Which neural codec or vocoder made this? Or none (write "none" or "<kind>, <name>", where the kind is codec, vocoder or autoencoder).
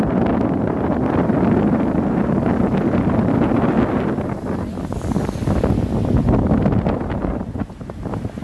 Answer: none